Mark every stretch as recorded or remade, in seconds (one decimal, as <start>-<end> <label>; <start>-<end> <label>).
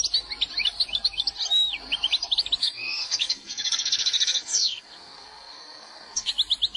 0.0-2.6 recorded; 2.6-6.3 remade; 6.3-6.8 recorded